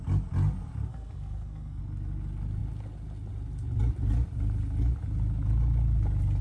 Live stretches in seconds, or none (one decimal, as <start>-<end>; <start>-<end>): 0.0-0.9; 1.8-6.4